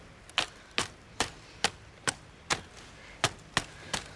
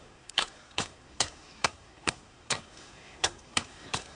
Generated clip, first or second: second